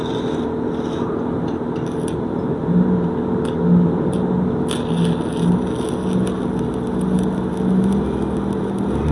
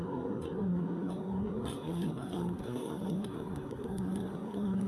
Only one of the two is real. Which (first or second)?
first